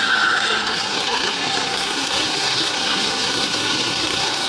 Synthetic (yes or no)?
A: yes